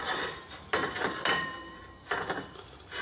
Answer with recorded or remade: remade